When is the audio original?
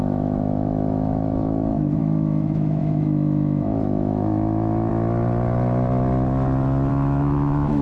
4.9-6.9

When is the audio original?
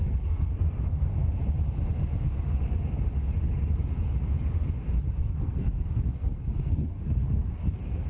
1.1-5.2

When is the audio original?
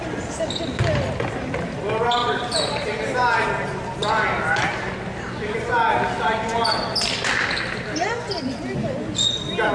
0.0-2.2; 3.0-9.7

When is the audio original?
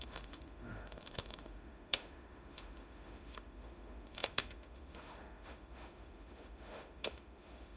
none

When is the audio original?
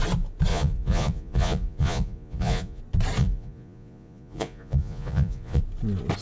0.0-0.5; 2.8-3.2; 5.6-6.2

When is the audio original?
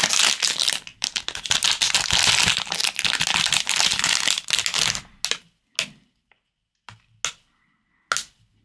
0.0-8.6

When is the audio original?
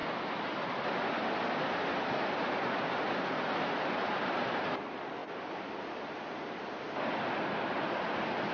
0.0-8.5